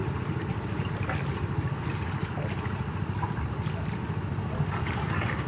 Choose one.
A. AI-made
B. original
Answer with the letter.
B